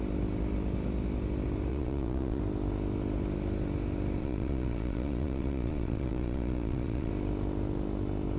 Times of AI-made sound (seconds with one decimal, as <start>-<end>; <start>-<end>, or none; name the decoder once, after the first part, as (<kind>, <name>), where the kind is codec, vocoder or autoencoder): 1.7-2.4 (vocoder, Vocos); 4.2-7.1